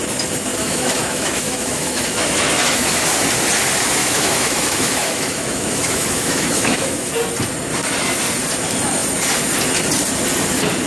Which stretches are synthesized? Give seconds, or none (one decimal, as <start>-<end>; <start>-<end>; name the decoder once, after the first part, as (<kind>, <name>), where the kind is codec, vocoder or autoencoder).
0.5-2.9 (autoencoder, DAC-VAE); 4.0-7.1